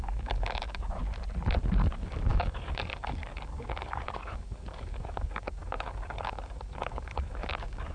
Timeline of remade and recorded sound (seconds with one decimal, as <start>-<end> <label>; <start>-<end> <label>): 0.0-1.0 remade; 1.0-1.9 recorded; 1.9-7.9 remade